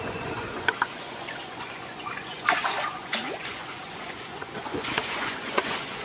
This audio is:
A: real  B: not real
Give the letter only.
B